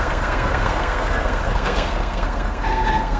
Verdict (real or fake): fake